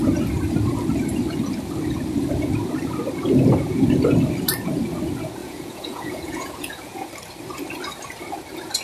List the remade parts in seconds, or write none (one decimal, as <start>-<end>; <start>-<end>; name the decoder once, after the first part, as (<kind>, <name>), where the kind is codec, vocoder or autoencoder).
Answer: 5.4-7.1 (vocoder, Vocos)